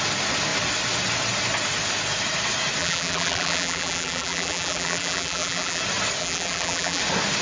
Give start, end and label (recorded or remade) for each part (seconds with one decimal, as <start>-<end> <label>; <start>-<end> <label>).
0.0-2.8 recorded; 2.8-5.8 remade; 5.8-6.2 recorded; 6.2-7.0 remade; 7.0-7.4 recorded